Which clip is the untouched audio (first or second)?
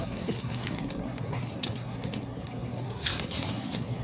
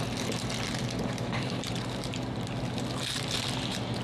second